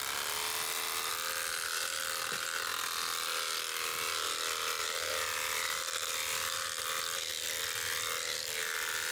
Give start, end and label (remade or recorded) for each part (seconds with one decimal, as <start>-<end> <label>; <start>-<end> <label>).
0.0-9.1 recorded